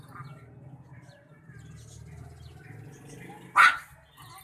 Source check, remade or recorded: recorded